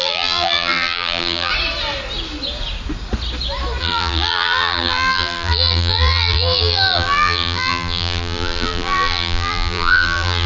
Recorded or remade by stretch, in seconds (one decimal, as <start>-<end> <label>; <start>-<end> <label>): 0.0-1.5 remade; 1.5-3.8 recorded; 3.8-10.5 remade